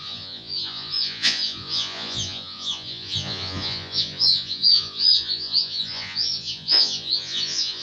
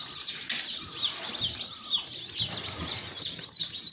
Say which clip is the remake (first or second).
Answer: first